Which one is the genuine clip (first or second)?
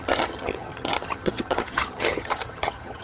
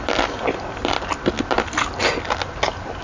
second